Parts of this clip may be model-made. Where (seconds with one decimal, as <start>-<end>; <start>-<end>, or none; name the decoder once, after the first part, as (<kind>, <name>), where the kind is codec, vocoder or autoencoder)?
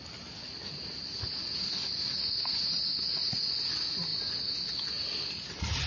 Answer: none